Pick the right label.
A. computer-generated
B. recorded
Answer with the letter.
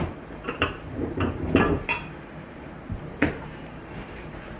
A